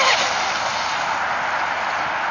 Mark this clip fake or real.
real